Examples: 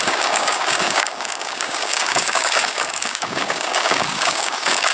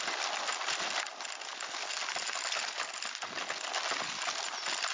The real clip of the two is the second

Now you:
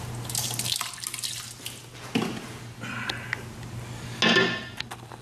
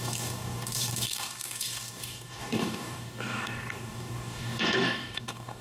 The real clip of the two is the first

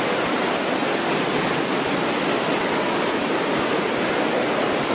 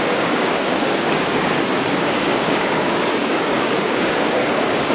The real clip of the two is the first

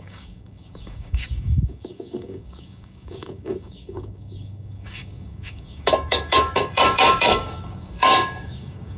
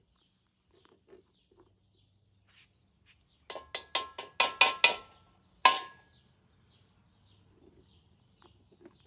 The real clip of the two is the second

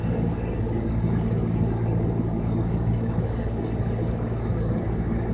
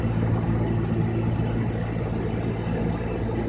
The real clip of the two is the second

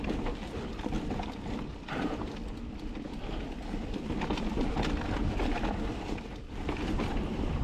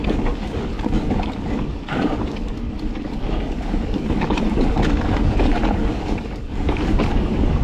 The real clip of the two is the first